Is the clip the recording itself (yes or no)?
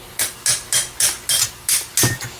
yes